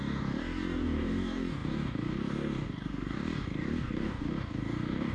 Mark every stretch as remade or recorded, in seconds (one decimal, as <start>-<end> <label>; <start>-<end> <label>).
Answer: 0.0-5.1 remade

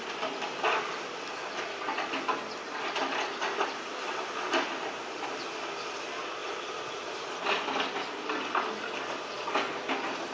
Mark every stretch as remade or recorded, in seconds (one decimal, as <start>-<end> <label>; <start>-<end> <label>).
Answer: 0.0-6.4 recorded; 6.4-7.2 remade; 7.2-10.3 recorded